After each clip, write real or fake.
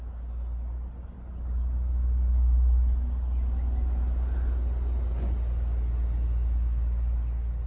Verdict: real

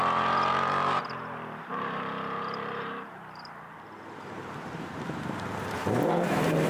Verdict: fake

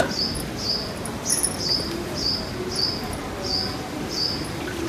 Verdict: real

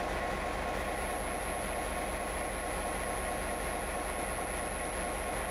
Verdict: real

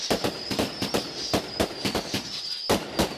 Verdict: real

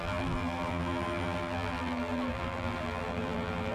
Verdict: fake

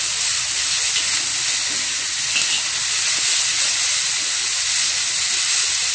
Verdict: real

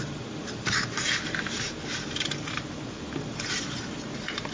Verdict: fake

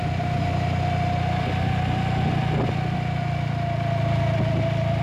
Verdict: real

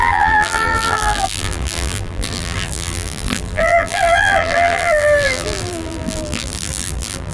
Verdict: fake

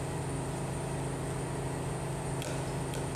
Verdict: real